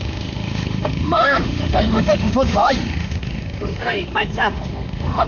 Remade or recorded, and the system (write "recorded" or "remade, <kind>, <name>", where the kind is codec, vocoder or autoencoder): remade, autoencoder, DAC-VAE